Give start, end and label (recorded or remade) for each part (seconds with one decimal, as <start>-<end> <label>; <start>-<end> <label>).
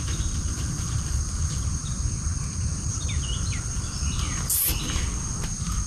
0.0-5.9 remade